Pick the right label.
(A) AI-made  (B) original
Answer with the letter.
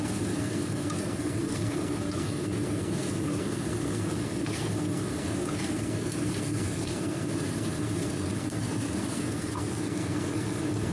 A